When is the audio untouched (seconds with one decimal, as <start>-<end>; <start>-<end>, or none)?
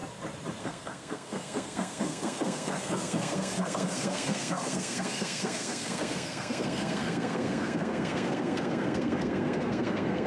0.0-0.6